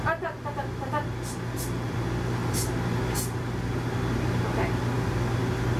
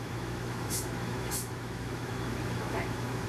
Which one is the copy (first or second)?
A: second